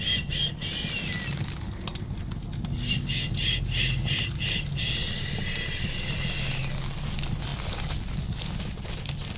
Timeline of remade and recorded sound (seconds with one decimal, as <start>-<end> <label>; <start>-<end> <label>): 0.0-9.4 recorded

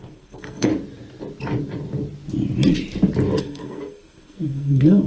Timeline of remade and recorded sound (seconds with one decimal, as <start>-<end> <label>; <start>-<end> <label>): 0.0-0.7 remade; 0.7-3.4 recorded; 3.4-5.1 remade

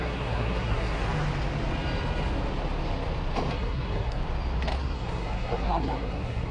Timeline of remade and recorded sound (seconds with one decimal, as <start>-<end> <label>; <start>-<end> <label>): 0.0-1.0 remade; 1.0-3.5 recorded; 3.5-4.2 remade; 4.2-4.8 recorded; 4.8-6.5 remade

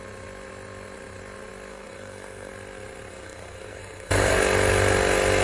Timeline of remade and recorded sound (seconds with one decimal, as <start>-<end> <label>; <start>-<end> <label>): 0.0-1.7 recorded; 1.7-2.5 remade; 2.5-3.1 recorded; 3.1-4.4 remade; 4.4-5.4 recorded